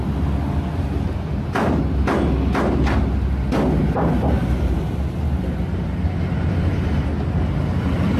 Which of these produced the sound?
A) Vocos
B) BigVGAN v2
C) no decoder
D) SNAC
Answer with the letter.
C